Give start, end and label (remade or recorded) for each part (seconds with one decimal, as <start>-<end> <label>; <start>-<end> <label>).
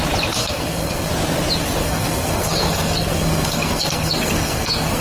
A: 0.0-0.4 recorded; 0.4-1.1 remade; 1.1-1.8 recorded; 1.8-5.0 remade